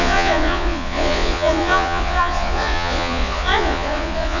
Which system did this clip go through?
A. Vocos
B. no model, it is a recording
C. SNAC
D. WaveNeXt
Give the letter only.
A